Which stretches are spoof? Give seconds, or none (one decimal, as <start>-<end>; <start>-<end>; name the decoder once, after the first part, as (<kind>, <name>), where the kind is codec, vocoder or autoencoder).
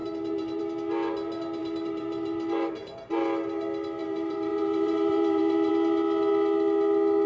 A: 0.0-0.6 (vocoder, BigVGAN v2); 1.6-2.7; 4.0-5.7